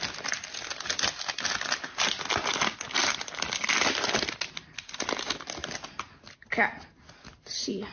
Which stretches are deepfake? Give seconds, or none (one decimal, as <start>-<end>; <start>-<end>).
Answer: none

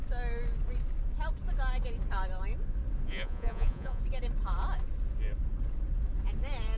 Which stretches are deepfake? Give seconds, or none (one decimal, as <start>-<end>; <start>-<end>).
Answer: 3.1-4.0

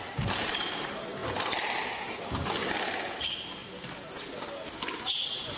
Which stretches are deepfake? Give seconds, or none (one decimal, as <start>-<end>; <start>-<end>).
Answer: none

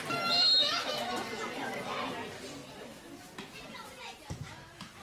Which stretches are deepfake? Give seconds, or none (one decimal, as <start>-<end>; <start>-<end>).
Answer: 0.5-1.1

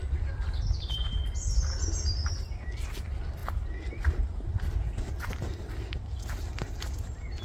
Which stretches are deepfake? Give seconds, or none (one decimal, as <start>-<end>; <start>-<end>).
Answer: none

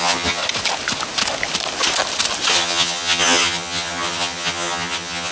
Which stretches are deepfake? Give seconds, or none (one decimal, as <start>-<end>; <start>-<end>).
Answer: 0.0-0.4; 2.5-5.3